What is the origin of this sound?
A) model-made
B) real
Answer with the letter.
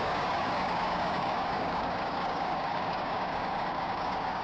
A